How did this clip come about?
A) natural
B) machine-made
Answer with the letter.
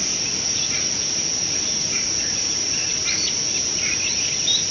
A